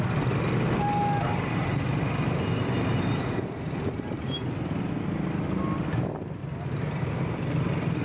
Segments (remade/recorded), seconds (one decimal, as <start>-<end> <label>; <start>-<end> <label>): 0.0-1.3 recorded; 1.3-4.9 remade; 4.9-6.4 recorded; 6.4-7.0 remade; 7.0-8.0 recorded